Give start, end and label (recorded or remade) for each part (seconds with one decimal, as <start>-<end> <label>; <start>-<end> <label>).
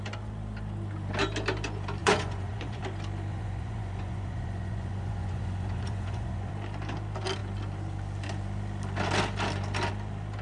0.0-2.0 recorded; 2.0-2.8 remade; 2.8-3.3 recorded; 3.3-6.5 remade; 6.5-10.4 recorded